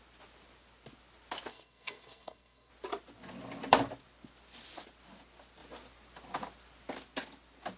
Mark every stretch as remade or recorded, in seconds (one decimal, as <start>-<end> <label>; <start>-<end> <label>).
0.0-1.5 recorded; 1.5-2.7 remade; 2.7-7.8 recorded